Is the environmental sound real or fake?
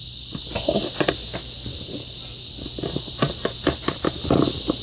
real